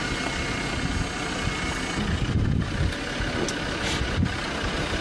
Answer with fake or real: real